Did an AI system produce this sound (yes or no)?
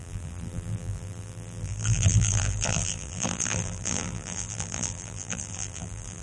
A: yes